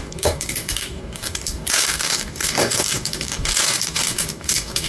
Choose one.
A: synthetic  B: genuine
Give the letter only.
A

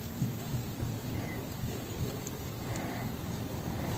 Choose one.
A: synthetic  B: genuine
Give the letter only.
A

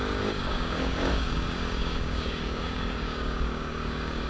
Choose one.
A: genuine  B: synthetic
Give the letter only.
B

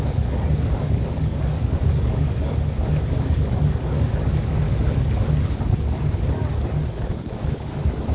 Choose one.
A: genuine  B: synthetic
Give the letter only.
B